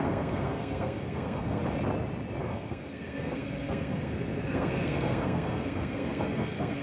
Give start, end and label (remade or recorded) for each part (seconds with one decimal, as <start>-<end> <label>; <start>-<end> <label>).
0.0-1.6 remade; 1.6-2.4 recorded; 2.4-6.8 remade